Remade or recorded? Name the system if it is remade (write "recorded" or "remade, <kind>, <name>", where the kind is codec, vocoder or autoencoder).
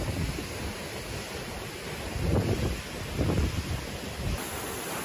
recorded